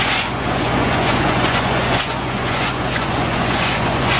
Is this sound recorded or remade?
remade